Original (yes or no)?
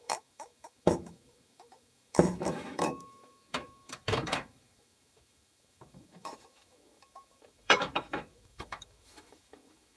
no